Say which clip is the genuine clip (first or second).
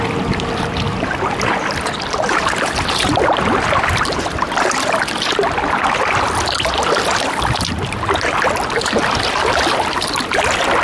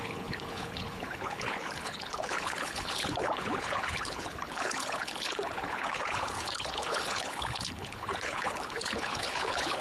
first